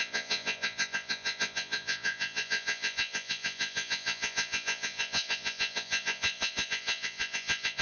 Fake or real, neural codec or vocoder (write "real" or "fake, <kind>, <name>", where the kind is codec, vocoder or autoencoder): fake, vocoder, Vocos